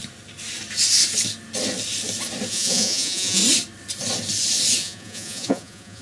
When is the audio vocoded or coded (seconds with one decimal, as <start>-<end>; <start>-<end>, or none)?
2.5-3.4; 4.8-6.0

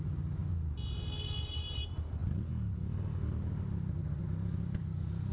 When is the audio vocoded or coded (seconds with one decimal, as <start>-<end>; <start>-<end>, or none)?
none

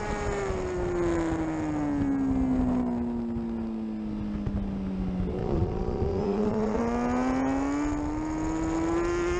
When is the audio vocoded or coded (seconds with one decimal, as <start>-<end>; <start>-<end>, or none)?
5.4-6.8

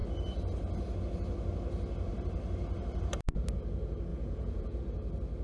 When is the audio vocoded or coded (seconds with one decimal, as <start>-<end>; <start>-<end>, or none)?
4.1-4.8

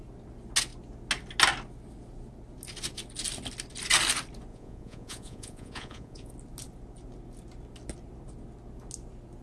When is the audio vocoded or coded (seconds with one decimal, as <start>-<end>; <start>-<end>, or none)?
4.5-6.3